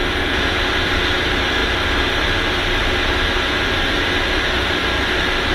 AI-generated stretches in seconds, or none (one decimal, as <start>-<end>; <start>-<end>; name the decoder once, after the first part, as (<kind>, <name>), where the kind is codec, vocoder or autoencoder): 0.0-0.6 (vocoder, Vocos)